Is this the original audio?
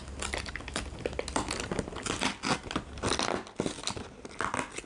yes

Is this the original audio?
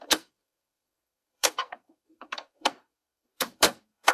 no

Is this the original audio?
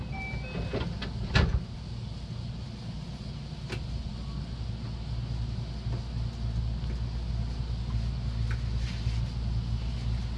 yes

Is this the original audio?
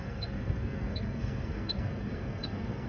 no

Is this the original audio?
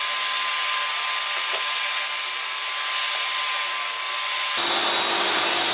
yes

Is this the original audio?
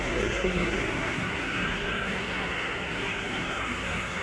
no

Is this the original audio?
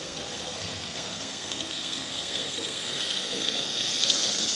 no